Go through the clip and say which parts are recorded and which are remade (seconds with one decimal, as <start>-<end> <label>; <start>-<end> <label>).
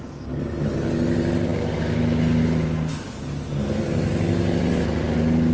0.0-5.5 recorded